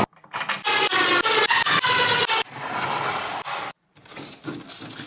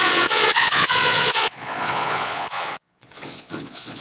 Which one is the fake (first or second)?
second